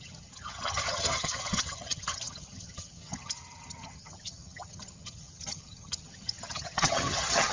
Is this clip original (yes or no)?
no